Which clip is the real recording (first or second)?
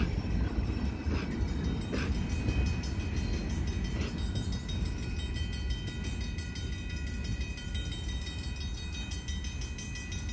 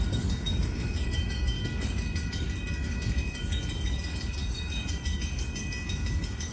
first